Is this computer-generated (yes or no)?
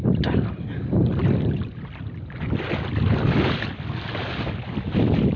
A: no